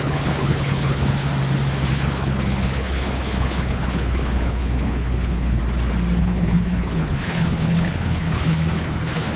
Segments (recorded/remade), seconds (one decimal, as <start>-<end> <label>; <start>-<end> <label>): 0.0-1.3 remade; 1.3-1.9 recorded; 1.9-5.6 remade; 5.6-6.2 recorded; 6.2-9.4 remade